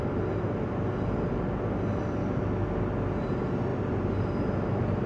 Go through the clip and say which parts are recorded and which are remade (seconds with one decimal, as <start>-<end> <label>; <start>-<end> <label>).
0.0-5.1 recorded